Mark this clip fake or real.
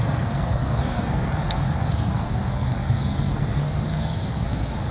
fake